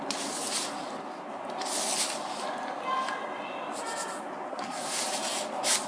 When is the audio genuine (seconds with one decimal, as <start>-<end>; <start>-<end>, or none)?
0.0-4.5; 5.0-5.9